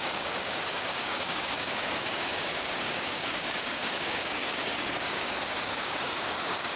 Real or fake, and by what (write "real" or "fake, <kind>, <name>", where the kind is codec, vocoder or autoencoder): fake, codec, DAC